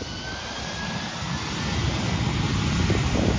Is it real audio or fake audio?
real